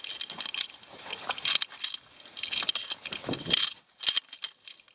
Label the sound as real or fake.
real